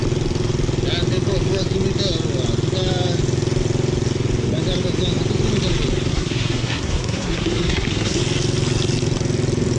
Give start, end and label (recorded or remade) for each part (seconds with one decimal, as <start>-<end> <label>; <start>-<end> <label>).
0.0-6.1 recorded; 6.1-8.2 remade; 8.2-9.8 recorded